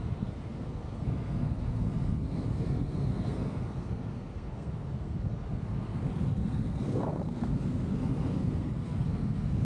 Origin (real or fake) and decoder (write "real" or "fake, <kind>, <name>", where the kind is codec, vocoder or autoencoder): fake, codec, SNAC